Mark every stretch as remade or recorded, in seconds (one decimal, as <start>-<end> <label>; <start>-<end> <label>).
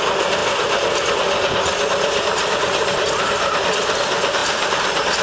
0.0-4.4 recorded; 4.4-5.2 remade